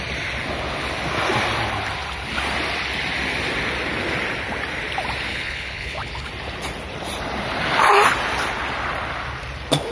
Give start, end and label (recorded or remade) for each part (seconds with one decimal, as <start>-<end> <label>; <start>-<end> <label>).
0.0-5.3 recorded; 5.3-6.3 remade; 6.3-9.9 recorded

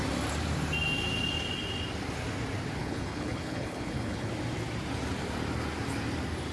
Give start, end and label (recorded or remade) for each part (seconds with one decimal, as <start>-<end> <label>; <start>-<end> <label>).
0.0-2.8 recorded; 2.8-4.3 remade; 4.3-6.5 recorded

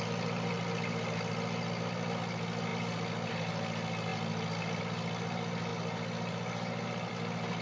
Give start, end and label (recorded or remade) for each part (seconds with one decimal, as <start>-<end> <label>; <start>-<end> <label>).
0.0-7.6 recorded